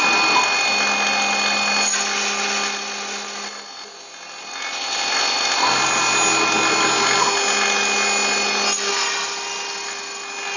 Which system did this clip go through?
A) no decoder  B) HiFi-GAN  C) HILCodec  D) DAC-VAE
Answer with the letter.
A